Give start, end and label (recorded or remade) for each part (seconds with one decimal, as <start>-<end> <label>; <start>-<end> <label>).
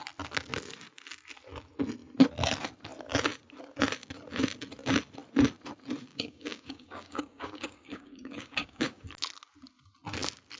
0.0-6.1 recorded; 6.1-9.0 remade; 9.0-10.6 recorded